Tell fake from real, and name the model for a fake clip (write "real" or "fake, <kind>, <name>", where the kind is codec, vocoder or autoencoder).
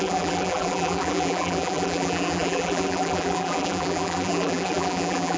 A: fake, vocoder, BigVGAN v2